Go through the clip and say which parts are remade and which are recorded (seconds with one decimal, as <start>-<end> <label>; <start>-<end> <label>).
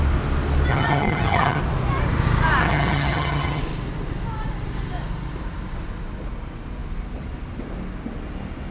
0.0-0.7 recorded; 0.7-1.6 remade; 1.6-2.6 recorded; 2.6-3.6 remade; 3.6-8.7 recorded